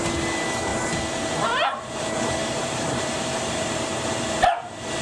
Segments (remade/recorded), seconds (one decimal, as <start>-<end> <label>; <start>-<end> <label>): 0.0-2.4 recorded; 2.4-3.8 remade; 3.8-5.0 recorded